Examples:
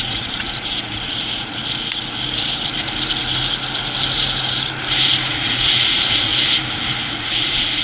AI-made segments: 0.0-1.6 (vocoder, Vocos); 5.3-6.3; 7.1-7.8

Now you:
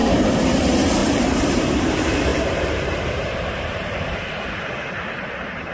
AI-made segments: 0.0-0.6 (vocoder, BigVGAN v2); 1.0-1.8; 2.3-4.3

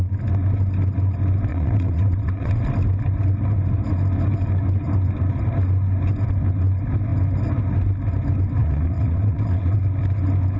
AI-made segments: 1.5-2.6 (vocoder, WaveNeXt); 8.6-9.8